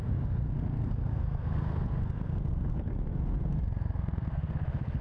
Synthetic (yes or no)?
yes